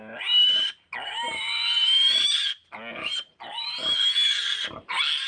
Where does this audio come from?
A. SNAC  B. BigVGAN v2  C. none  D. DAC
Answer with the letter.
C